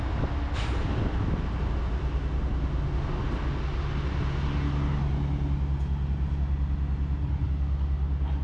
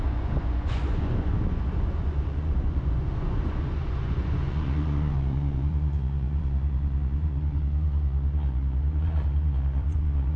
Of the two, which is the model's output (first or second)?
second